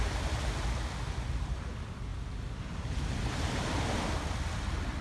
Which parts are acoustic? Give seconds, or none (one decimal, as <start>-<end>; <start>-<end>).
0.0-5.0